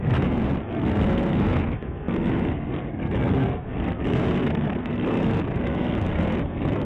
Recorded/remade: remade